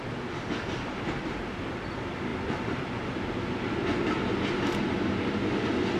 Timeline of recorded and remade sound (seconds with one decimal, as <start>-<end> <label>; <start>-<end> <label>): 0.0-6.0 recorded